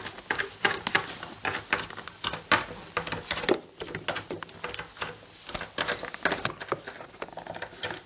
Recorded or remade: recorded